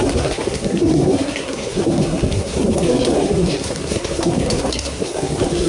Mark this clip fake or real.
fake